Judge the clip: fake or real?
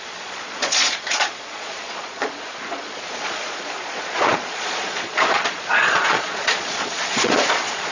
fake